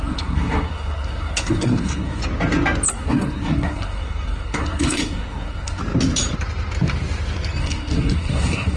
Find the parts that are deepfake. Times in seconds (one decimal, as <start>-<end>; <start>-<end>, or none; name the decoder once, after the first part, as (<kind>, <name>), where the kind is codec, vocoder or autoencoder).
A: 0.0-2.2 (codec, SNAC); 2.9-5.8; 7.6-8.8